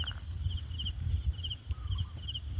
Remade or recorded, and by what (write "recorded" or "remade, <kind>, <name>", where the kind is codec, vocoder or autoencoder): recorded